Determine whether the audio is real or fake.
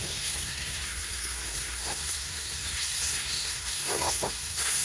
fake